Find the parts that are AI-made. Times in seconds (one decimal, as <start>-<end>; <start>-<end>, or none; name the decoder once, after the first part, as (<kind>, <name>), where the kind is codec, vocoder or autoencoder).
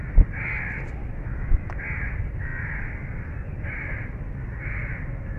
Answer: 1.0-1.8 (autoencoder, DAC-VAE)